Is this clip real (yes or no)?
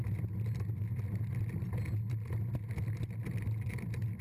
yes